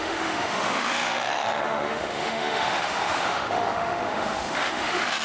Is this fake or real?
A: fake